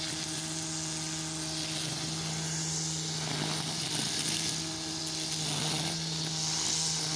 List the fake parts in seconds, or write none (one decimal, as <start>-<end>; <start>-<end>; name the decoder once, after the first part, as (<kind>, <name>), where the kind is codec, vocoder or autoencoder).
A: none